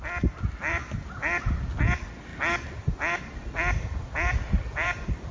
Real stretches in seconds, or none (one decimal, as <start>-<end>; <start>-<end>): 0.0-5.3